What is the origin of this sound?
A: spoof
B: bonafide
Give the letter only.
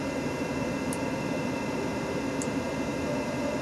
A